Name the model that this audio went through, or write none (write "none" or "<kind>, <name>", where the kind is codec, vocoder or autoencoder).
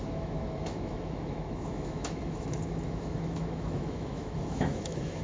autoencoder, DAC-VAE